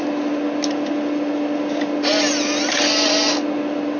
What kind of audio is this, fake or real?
real